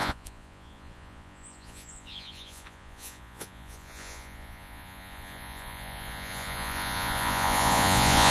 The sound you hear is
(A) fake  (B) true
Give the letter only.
A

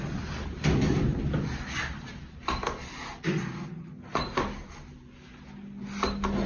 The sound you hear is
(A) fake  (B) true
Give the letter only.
B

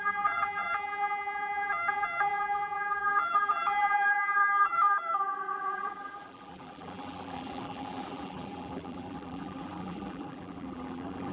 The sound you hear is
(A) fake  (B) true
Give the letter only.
A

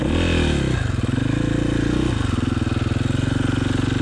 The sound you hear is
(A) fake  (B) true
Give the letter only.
B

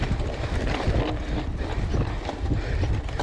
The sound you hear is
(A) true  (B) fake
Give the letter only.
A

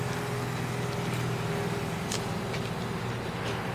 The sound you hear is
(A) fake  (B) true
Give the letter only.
B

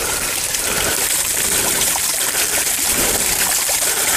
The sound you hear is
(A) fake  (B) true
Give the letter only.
A